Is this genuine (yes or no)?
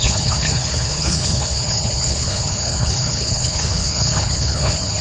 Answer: no